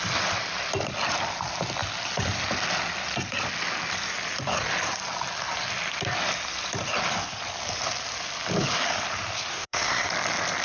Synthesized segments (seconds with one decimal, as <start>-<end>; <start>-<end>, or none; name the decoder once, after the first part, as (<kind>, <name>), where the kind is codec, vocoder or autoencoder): 9.5-10.1 (codec, SNAC)

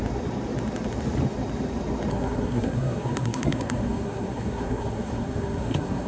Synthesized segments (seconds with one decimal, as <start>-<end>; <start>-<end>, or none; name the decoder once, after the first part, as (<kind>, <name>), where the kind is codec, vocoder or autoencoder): 2.1-6.1 (codec, SNAC)